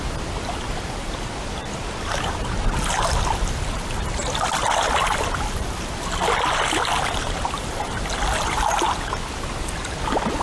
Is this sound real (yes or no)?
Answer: yes